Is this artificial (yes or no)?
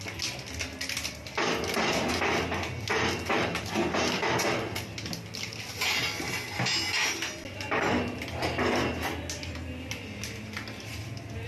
no